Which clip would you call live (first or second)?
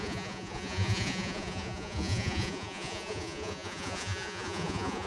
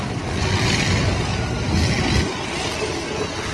second